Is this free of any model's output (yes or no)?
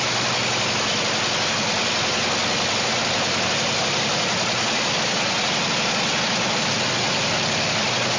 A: yes